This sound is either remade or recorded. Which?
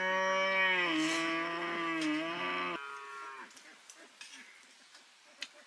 recorded